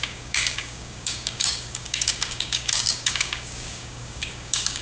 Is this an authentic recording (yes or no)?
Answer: no